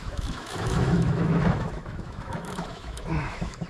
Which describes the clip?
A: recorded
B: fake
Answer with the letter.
B